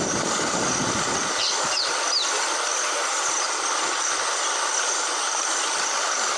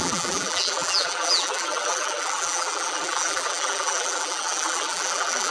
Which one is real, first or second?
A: first